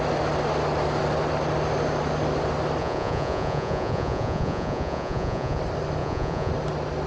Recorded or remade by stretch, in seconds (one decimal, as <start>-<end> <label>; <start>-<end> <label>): 0.0-2.8 recorded; 2.8-5.6 remade; 5.6-6.0 recorded; 6.0-6.5 remade; 6.5-7.1 recorded